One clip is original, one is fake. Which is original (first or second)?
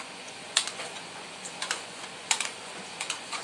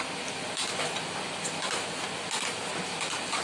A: second